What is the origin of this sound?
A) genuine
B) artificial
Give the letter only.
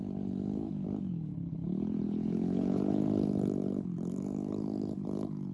B